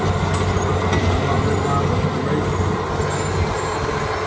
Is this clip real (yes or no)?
yes